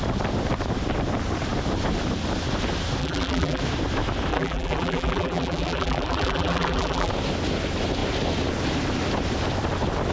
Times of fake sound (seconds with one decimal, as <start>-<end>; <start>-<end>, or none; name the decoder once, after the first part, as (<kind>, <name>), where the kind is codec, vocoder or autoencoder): 3.0-3.6 (vocoder, BigVGAN v2); 4.3-7.1